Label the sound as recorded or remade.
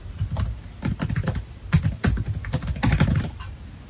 remade